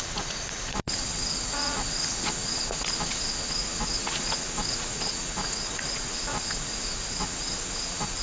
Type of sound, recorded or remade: remade